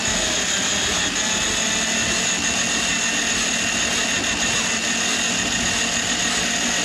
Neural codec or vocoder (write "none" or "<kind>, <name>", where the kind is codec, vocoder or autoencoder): none